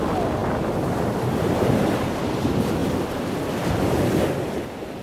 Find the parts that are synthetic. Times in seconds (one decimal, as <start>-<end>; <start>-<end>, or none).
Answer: 0.4-2.2; 2.8-4.0